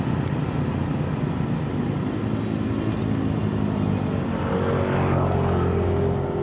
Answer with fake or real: real